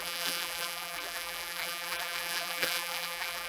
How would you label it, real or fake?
fake